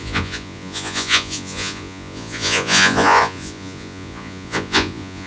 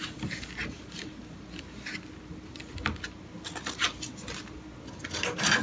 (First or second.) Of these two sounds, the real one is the second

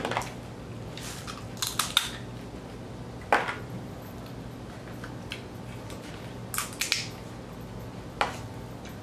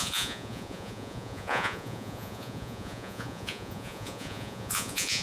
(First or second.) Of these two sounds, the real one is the first